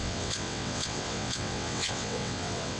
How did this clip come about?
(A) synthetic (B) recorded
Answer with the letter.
A